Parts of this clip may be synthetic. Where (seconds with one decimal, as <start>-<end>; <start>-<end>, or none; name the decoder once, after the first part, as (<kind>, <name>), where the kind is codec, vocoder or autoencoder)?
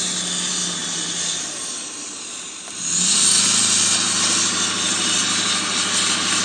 none